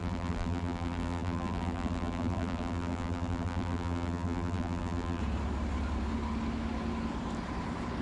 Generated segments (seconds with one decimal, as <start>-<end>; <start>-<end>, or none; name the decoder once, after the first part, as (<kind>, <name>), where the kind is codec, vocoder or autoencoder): 0.0-5.2 (vocoder, BigVGAN v2)